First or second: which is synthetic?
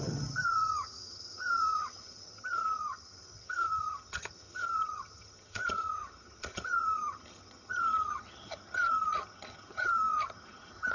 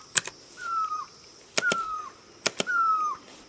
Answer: first